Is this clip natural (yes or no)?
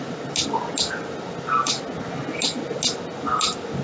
yes